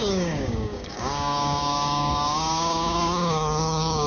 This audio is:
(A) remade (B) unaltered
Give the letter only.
A